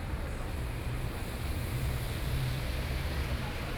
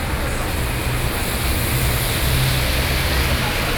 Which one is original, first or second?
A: second